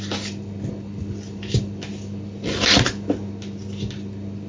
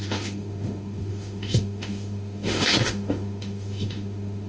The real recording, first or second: first